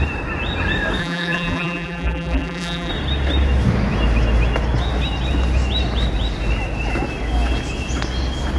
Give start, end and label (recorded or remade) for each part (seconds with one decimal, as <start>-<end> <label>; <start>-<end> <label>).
0.0-1.0 recorded; 1.0-2.9 remade; 2.9-8.6 recorded